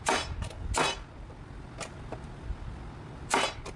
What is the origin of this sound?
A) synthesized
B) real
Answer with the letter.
B